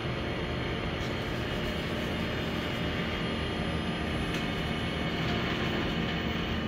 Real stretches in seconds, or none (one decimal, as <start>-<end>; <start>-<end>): 0.0-6.7